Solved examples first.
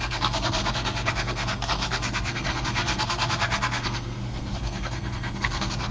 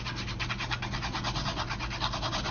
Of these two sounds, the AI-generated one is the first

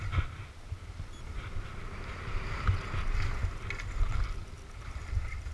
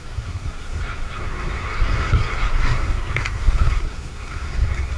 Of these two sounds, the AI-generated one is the second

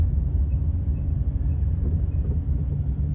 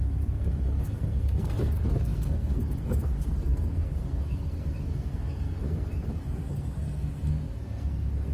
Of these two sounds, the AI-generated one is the second